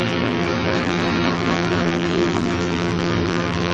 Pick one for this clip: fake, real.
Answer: fake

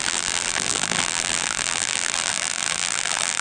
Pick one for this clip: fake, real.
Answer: fake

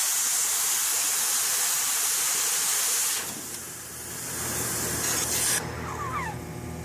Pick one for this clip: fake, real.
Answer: real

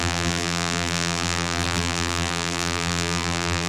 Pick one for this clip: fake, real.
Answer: fake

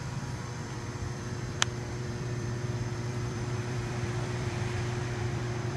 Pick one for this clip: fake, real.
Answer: fake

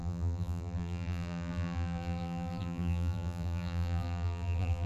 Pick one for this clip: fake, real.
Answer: fake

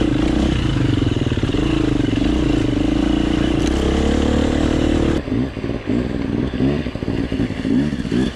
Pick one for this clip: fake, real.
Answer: real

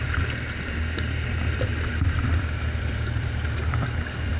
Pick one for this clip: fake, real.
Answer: fake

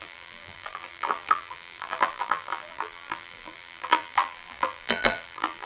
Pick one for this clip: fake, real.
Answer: fake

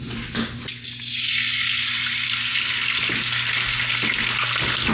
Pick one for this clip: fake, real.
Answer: real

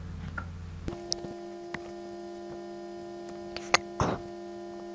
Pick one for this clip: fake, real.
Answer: real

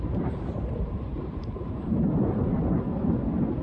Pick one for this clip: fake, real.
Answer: fake